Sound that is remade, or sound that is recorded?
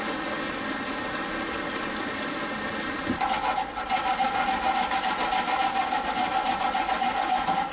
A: recorded